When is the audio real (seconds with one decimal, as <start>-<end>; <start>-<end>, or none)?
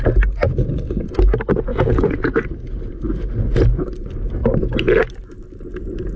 0.0-1.7; 2.4-6.2